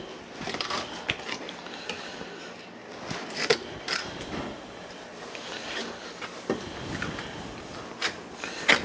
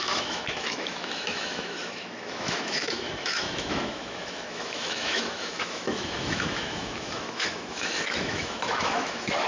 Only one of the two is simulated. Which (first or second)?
second